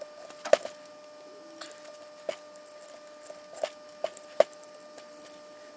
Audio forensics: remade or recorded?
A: recorded